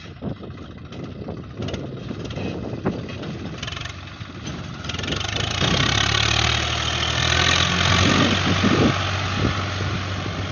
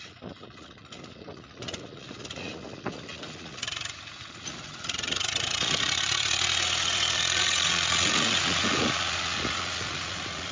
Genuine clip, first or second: first